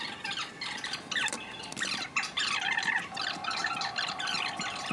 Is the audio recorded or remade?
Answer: recorded